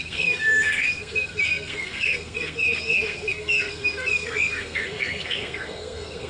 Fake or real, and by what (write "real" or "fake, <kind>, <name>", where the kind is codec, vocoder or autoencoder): fake, codec, SNAC